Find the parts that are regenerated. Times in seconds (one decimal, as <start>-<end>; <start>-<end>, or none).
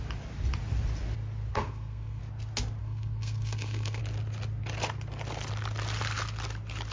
1.5-2.2; 2.8-4.0